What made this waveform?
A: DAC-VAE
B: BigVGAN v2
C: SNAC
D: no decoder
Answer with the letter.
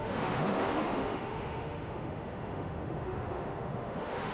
A